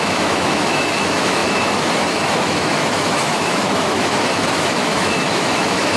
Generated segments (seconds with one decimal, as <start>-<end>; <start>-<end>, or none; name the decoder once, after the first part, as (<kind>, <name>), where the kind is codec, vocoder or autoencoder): 0.0-6.0 (autoencoder, DAC-VAE)